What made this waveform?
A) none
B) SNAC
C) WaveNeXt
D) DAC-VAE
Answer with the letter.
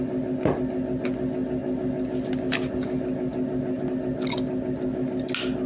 A